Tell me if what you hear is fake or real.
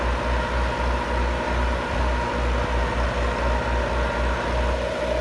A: real